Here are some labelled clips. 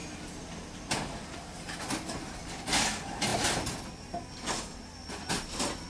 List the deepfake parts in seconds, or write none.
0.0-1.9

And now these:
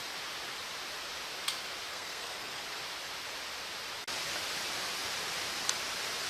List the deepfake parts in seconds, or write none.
1.9-2.6